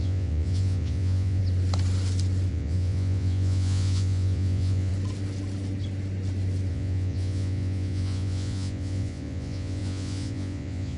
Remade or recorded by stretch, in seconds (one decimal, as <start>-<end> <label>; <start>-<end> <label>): 0.0-1.4 remade; 1.4-2.5 recorded; 2.5-4.9 remade; 4.9-6.7 recorded; 6.7-11.0 remade